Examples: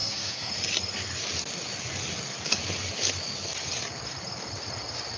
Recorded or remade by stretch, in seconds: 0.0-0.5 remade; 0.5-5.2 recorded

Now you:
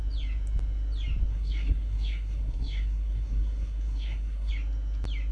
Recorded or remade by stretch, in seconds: 0.0-1.3 recorded; 1.3-4.5 remade; 4.5-5.3 recorded

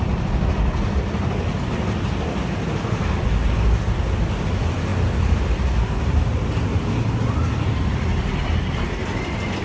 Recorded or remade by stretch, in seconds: 0.0-9.6 recorded